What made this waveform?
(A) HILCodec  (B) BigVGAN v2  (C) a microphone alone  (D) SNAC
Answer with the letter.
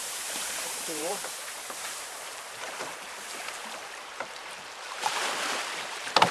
B